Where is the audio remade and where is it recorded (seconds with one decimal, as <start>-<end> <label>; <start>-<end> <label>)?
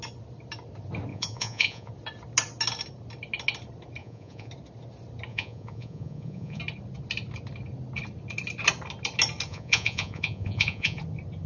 0.0-1.1 recorded; 1.1-1.9 remade; 1.9-4.0 recorded; 4.0-4.5 remade; 4.5-5.3 recorded; 5.3-6.6 remade; 6.6-9.5 recorded; 9.5-11.0 remade; 11.0-11.5 recorded